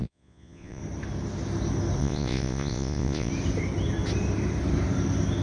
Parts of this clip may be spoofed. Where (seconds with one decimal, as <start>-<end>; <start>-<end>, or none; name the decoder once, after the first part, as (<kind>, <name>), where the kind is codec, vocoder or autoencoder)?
0.0-0.8 (vocoder, Vocos); 2.0-3.3